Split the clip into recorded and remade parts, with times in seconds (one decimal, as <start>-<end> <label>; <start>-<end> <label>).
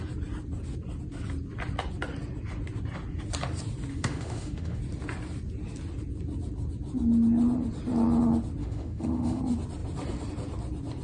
0.0-3.9 recorded; 3.9-4.8 remade; 4.8-8.6 recorded; 8.6-9.4 remade; 9.4-11.0 recorded